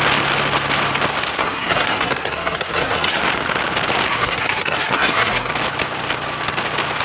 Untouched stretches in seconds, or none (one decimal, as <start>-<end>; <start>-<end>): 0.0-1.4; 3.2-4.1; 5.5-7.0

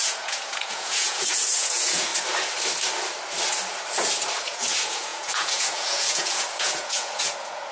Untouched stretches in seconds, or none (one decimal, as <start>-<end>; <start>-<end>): 2.1-4.4

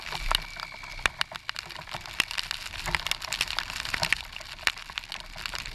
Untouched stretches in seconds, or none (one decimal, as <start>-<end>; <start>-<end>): 0.0-5.7

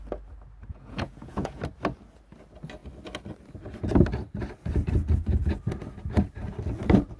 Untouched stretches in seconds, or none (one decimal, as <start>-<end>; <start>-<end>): 0.0-0.7; 1.6-7.2

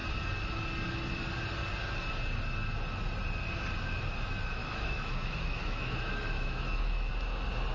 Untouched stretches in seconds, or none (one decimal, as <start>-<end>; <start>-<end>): 0.0-4.6; 7.1-7.7

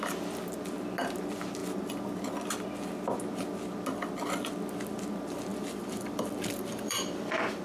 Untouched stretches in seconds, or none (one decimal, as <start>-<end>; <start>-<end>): 0.0-5.5

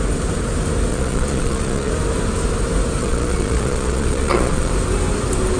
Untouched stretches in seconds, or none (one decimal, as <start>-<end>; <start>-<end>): 0.0-0.9; 1.9-3.0; 4.7-5.6

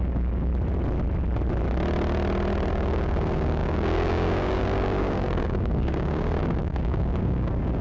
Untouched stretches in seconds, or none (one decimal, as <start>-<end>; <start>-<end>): 0.5-2.7